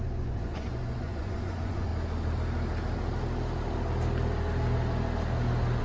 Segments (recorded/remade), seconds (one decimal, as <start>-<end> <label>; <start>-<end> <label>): 0.0-1.9 remade; 1.9-5.8 recorded